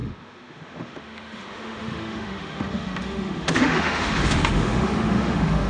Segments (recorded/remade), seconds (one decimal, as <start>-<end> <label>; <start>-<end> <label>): 0.0-5.7 remade